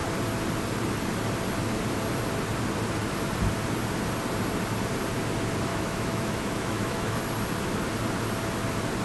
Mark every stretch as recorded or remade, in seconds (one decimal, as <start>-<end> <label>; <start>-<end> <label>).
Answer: 0.0-5.7 recorded; 5.7-7.2 remade; 7.2-9.0 recorded

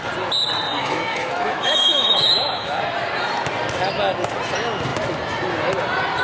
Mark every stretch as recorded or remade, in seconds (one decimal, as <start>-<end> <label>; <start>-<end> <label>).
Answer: 0.0-0.8 recorded; 0.8-2.8 remade; 2.8-6.2 recorded